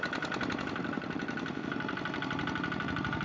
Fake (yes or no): yes